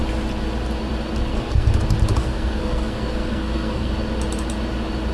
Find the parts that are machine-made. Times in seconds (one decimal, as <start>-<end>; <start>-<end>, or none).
1.3-1.8; 2.2-3.9